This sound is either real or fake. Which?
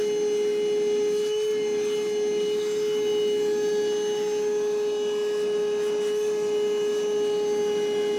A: real